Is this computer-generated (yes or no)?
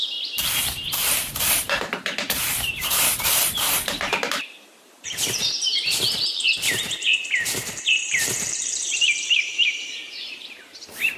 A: yes